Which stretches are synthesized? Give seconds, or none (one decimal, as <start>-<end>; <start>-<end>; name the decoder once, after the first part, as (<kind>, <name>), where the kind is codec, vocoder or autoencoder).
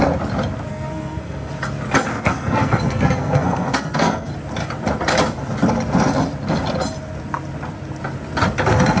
0.7-1.5 (codec, SNAC); 2.1-4.3